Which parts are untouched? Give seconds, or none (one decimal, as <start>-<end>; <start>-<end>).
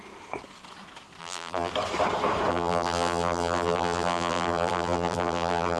0.0-1.2; 1.7-2.5